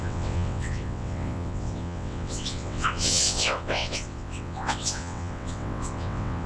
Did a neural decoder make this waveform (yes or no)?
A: yes